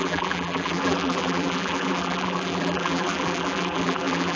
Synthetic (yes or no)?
yes